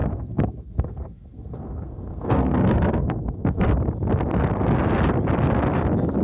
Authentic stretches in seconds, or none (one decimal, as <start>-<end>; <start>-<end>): 3.7-6.2